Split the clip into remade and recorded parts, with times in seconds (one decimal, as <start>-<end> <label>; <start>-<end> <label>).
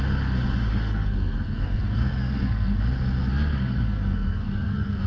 0.0-0.7 recorded; 0.7-2.8 remade; 2.8-3.2 recorded; 3.2-5.1 remade